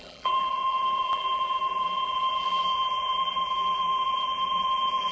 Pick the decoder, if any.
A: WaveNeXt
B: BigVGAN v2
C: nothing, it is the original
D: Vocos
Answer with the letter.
B